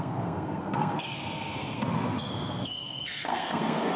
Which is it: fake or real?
fake